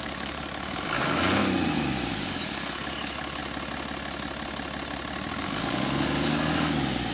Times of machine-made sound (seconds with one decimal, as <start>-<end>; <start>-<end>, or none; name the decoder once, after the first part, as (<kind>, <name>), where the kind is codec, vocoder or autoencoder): 0.0-1.4 (codec, DAC); 2.1-3.4; 5.4-7.1

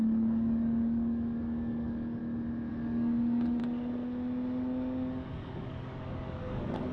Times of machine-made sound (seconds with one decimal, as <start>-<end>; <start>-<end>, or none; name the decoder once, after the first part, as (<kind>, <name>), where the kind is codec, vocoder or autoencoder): 0.0-2.2 (codec, DAC); 2.7-3.6; 5.1-6.9

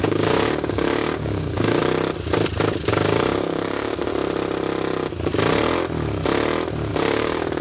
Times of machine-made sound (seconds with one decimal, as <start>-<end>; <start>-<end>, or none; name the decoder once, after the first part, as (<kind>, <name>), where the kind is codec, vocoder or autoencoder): 0.0-1.8 (codec, DAC); 2.8-4.1; 6.9-7.6

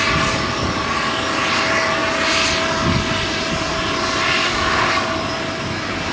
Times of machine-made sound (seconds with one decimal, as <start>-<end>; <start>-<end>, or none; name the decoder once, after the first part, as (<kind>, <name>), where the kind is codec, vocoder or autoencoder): 4.4-5.2 (codec, DAC)

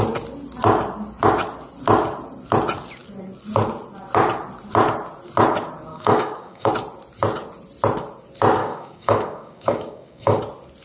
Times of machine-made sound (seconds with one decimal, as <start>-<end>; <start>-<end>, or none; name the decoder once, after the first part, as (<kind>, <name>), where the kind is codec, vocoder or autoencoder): 5.9-6.7 (codec, DAC); 8.6-10.4

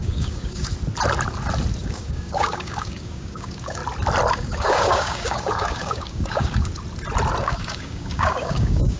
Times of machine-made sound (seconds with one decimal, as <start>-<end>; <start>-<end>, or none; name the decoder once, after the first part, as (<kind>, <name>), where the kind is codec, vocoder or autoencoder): 0.0-0.7 (codec, DAC); 1.8-3.8; 4.3-6.7; 7.4-9.0

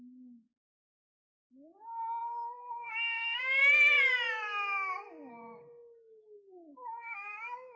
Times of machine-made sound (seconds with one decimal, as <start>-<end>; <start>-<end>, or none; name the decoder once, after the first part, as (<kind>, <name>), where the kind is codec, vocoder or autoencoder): 0.0-2.2 (codec, DAC); 2.9-3.6; 5.3-7.8

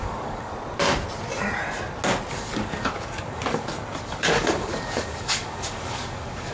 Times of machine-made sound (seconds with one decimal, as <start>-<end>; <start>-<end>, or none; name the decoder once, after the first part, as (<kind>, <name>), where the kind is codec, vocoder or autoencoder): 0.0-0.5 (codec, DAC); 2.3-6.5